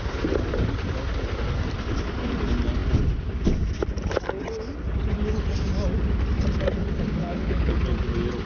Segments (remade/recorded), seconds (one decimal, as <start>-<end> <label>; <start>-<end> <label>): 0.0-7.2 recorded; 7.2-7.8 remade; 7.8-8.5 recorded